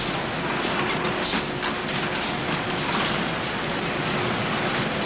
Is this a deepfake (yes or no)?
no